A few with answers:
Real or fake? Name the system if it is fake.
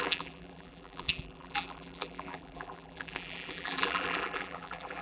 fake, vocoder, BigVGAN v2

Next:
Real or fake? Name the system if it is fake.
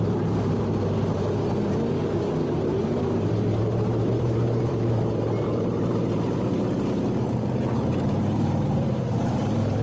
fake, vocoder, BigVGAN v2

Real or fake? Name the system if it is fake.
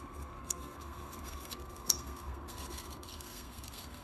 fake, codec, SNAC